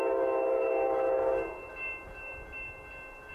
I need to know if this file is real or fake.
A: real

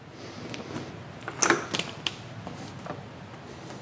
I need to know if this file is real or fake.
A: real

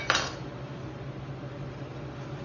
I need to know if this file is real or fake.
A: real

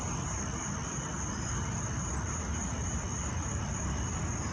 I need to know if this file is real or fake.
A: real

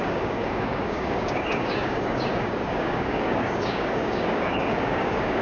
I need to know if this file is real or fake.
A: fake